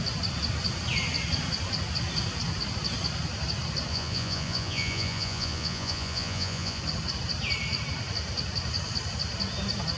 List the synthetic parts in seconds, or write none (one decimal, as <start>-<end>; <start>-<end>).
3.9-6.8